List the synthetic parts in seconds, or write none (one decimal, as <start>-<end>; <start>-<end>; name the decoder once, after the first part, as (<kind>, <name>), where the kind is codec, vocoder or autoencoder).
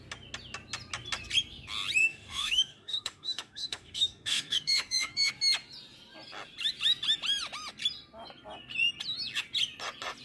2.0-5.3 (autoencoder, DAC-VAE)